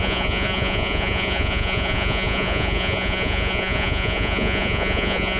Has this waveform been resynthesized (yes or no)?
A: yes